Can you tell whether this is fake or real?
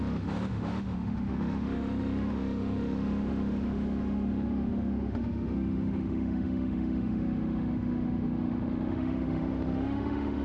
fake